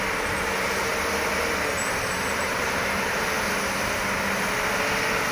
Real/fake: real